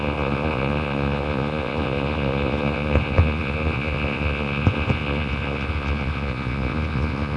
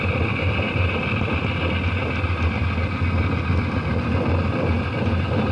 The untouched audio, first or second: second